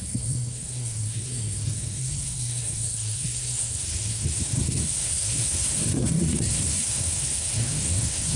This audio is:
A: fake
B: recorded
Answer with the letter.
A